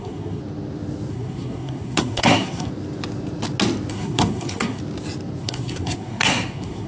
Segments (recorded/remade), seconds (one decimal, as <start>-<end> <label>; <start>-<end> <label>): 0.0-0.4 remade; 0.4-1.1 recorded; 1.1-2.7 remade; 2.7-3.9 recorded; 3.9-4.8 remade; 4.8-5.4 recorded; 5.4-6.9 remade